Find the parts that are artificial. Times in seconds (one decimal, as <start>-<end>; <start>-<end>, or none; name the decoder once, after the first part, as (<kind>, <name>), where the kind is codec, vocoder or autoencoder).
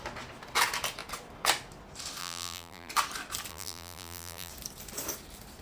2.2-2.9 (vocoder, BigVGAN v2); 3.5-4.5